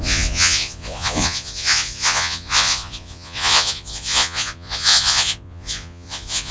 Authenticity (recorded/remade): remade